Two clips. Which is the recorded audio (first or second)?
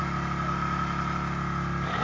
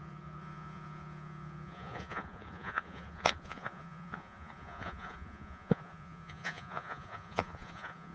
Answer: first